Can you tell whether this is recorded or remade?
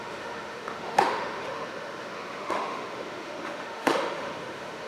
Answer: remade